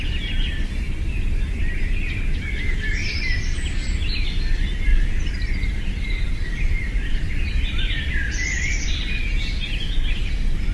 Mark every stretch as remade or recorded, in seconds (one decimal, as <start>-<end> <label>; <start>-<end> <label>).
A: 0.0-4.9 recorded; 4.9-7.6 remade; 7.6-10.7 recorded